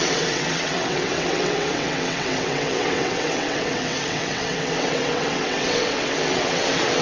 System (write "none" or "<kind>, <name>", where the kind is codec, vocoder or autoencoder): vocoder, WaveNeXt